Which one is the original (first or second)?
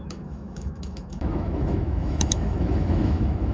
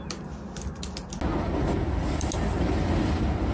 second